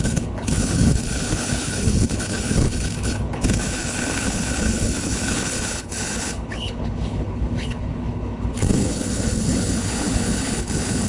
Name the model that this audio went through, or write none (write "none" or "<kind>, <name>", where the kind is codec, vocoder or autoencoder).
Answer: codec, HILCodec